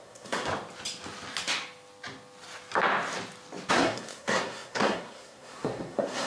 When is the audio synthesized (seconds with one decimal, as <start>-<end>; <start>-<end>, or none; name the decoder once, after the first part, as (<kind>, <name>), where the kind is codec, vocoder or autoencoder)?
0.0-0.5 (codec, SNAC); 3.7-6.3